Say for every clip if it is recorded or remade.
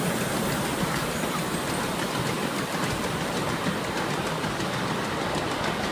recorded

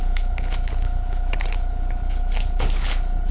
remade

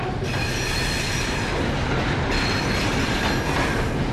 recorded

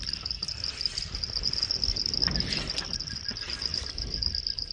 recorded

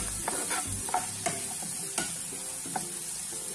recorded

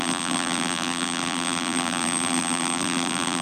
remade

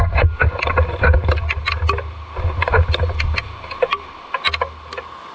recorded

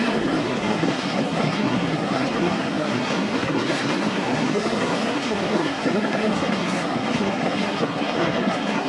remade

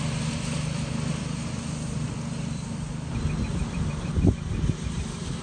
recorded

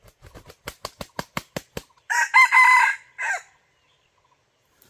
recorded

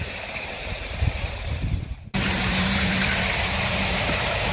remade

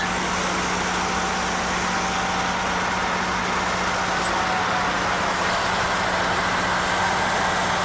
recorded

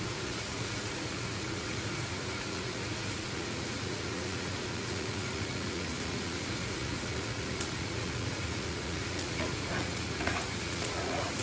remade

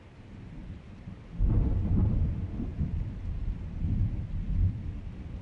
recorded